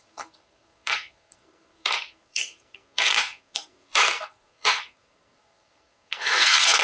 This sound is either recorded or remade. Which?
remade